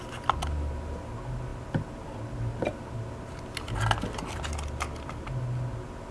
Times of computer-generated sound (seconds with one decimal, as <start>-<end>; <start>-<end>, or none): none